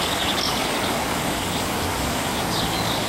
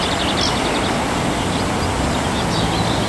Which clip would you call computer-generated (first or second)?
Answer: first